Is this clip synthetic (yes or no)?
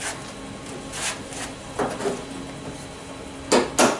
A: no